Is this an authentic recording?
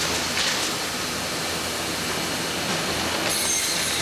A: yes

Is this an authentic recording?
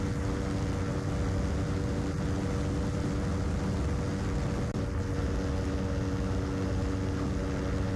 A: yes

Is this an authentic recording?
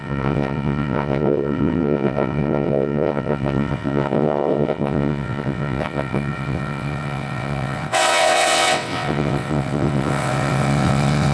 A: no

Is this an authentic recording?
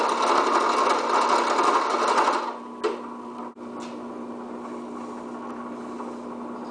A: yes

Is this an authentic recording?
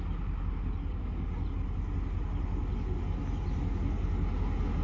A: yes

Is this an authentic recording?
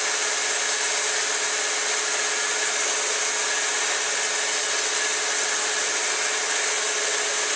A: yes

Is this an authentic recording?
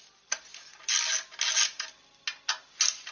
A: yes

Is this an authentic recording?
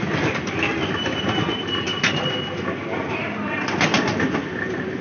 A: yes